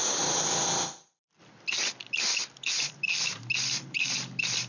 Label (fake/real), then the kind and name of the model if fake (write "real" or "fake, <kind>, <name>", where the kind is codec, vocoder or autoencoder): real